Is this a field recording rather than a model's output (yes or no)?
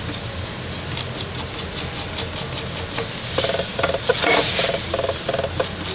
yes